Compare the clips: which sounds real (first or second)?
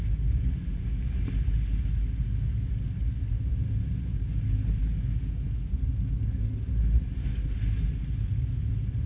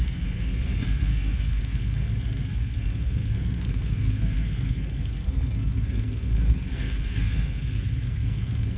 first